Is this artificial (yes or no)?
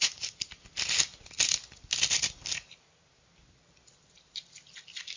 no